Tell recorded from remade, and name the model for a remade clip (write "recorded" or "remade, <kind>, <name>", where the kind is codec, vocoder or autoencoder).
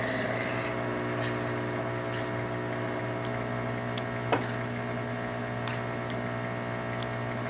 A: recorded